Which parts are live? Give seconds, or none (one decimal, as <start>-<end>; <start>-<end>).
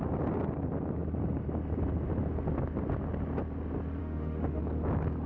0.0-4.0; 4.6-5.3